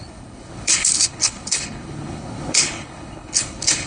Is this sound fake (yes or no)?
yes